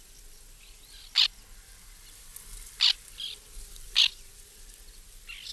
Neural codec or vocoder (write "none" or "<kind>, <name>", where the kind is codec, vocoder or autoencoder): none